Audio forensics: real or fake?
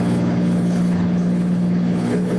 fake